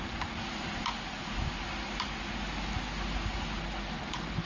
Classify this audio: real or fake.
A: real